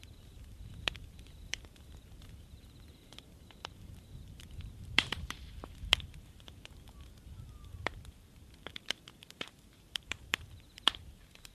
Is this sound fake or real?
fake